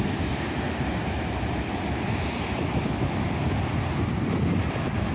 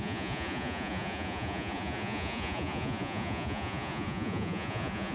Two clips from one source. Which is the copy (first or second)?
second